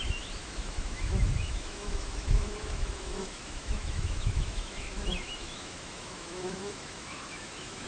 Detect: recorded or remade remade